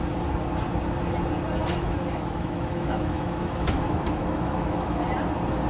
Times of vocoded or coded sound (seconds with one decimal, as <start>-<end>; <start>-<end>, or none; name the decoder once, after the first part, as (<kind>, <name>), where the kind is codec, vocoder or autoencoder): 1.6-5.0 (autoencoder, DAC-VAE)